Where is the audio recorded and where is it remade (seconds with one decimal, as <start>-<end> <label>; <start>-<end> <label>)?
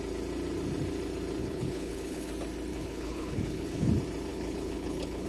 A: 0.0-1.4 recorded; 1.4-2.3 remade; 2.3-2.7 recorded; 2.7-3.9 remade; 3.9-4.3 recorded; 4.3-5.3 remade